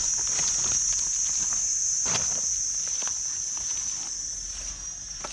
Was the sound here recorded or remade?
recorded